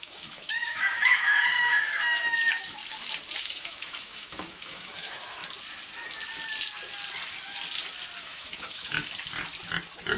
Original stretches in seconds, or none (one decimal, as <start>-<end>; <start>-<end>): 2.8-3.4; 5.4-8.2; 9.0-10.2